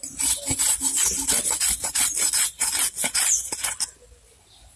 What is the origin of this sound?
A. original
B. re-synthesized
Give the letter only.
A